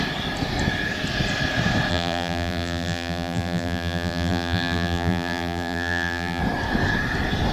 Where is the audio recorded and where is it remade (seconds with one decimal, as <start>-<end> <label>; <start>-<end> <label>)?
0.0-1.9 recorded; 1.9-6.4 remade; 6.4-7.5 recorded